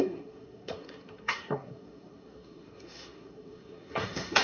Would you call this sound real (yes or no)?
no